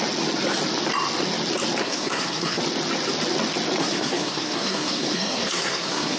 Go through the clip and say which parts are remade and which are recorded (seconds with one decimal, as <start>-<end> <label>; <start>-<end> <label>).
0.0-1.8 recorded; 1.8-2.6 remade; 2.6-3.8 recorded; 3.8-6.2 remade

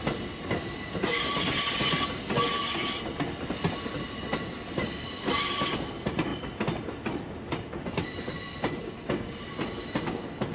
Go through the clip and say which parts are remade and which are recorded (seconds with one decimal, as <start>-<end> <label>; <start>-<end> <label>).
0.0-10.5 recorded

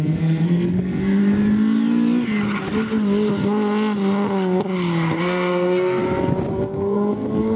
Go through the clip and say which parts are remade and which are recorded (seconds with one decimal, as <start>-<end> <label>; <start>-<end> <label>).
0.0-1.2 remade; 1.2-5.2 recorded; 5.2-6.0 remade; 6.0-6.5 recorded; 6.5-7.6 remade

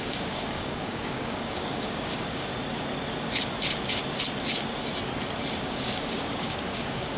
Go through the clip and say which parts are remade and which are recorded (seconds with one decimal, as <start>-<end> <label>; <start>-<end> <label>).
0.0-2.5 remade; 2.5-5.6 recorded; 5.6-7.2 remade